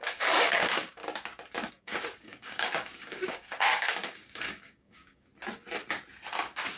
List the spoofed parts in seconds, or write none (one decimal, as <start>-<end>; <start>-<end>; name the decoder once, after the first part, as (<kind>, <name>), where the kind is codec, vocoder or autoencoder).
0.0-1.0 (codec, DAC); 1.7-5.3; 6.3-6.8